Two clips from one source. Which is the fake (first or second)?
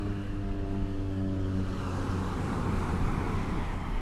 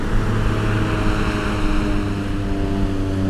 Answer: first